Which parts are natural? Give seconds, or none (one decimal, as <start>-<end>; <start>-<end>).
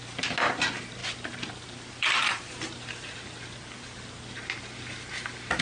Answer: 0.0-1.0; 4.4-5.6